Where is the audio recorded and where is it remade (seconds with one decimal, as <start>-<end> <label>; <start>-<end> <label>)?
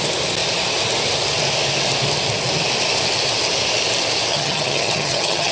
0.0-4.3 recorded; 4.3-5.5 remade